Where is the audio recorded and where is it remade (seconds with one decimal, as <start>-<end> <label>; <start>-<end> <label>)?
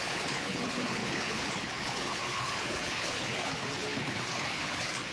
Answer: 0.0-5.1 remade